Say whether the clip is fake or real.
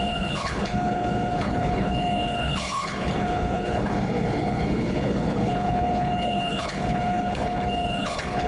fake